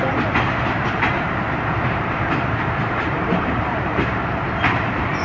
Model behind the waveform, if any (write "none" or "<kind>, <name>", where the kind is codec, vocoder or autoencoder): vocoder, BigVGAN v2